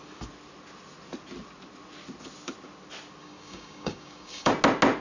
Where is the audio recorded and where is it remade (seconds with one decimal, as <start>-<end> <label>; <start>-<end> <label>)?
0.0-3.2 recorded; 3.2-4.5 remade; 4.5-5.0 recorded